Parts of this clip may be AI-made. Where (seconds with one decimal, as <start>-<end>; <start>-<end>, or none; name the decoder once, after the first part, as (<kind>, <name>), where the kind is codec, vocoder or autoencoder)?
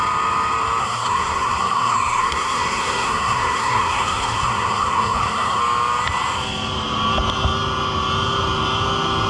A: 0.8-5.6 (codec, SNAC)